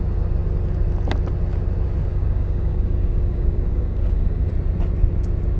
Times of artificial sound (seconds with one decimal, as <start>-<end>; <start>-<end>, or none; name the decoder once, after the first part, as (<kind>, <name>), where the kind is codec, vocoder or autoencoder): 2.1-4.5 (codec, DAC)